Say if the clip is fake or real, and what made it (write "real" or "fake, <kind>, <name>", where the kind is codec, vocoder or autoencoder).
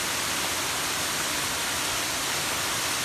real